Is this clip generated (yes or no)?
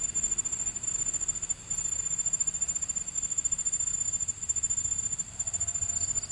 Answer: no